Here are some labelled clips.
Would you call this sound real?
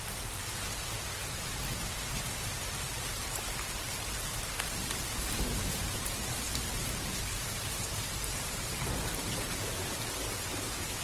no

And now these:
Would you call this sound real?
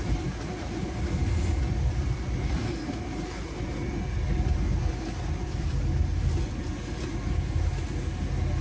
yes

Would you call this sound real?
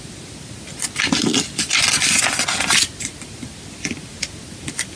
yes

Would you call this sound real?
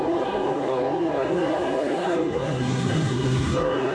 no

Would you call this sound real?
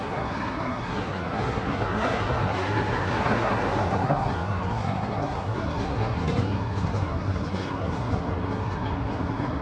no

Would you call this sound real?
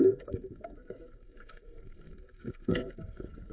no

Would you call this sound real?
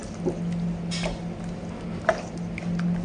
yes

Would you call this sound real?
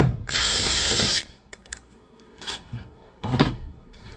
no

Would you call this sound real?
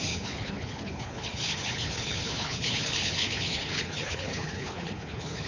no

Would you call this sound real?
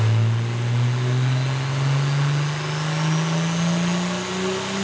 yes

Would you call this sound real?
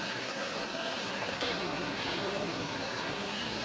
no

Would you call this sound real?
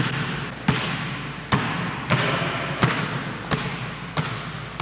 yes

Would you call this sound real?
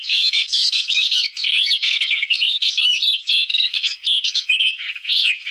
no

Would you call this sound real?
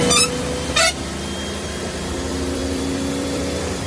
no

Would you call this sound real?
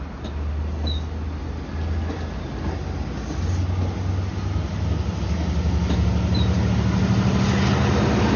yes